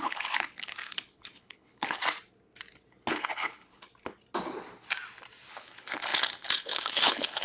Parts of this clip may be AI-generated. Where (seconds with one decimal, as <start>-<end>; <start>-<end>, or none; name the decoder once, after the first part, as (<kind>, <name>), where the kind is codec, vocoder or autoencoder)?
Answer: 0.0-2.0 (codec, HILCodec); 3.1-3.9; 5.5-7.4